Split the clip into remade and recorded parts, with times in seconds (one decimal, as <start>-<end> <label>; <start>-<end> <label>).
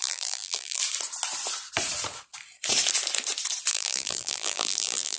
0.0-0.8 remade; 0.8-3.7 recorded; 3.7-5.2 remade